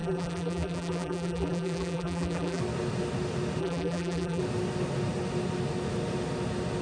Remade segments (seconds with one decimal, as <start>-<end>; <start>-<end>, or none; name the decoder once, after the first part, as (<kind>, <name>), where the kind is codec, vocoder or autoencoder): 0.0-2.6 (vocoder, BigVGAN v2); 3.6-4.4